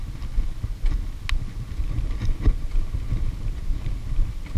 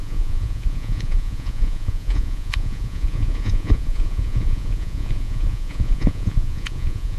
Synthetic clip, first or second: second